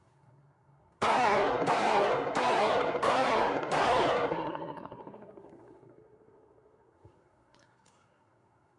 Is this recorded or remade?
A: remade